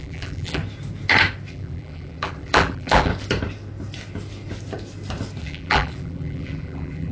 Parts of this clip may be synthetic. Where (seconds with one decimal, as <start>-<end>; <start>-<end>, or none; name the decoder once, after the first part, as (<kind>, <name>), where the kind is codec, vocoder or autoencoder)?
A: 0.0-0.6 (vocoder, BigVGAN v2); 1.5-3.1; 5.4-7.1